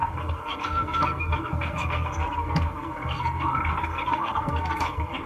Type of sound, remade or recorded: remade